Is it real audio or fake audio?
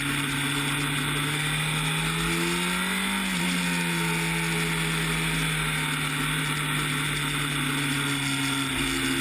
real